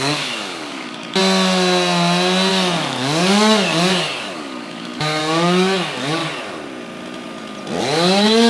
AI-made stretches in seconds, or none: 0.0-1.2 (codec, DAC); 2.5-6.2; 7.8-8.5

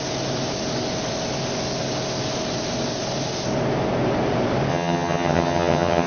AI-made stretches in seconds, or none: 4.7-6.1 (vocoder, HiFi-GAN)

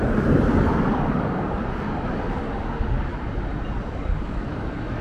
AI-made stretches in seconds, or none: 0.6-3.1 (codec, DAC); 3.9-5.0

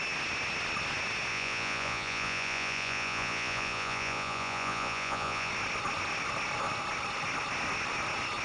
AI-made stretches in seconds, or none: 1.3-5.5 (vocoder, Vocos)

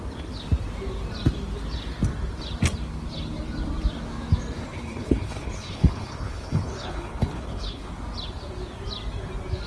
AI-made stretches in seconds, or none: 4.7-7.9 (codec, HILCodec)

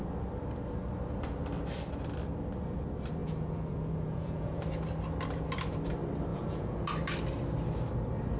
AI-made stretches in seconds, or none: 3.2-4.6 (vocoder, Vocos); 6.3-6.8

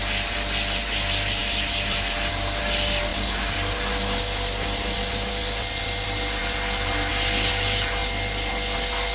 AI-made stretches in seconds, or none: none

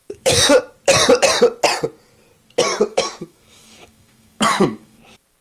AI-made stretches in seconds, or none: 0.0-0.6 (autoencoder, DAC-VAE); 2.9-5.0